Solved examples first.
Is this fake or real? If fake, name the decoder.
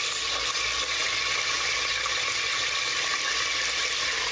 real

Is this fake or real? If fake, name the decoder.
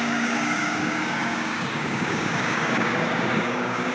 fake, codec, DAC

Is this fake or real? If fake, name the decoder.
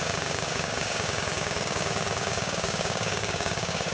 fake, codec, DAC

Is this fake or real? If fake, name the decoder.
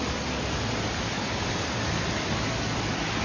real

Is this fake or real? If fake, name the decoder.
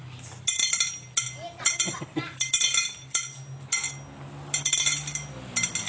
real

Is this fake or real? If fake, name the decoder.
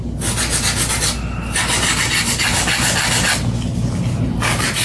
real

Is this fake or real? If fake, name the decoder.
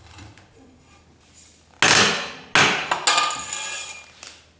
real